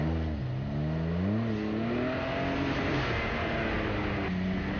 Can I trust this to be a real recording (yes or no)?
yes